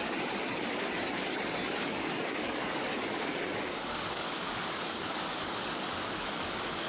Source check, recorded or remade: remade